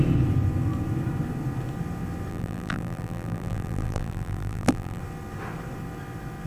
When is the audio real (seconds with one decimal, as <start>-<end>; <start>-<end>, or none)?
0.0-2.3; 5.0-6.5